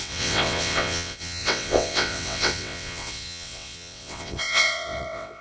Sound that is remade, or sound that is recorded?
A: remade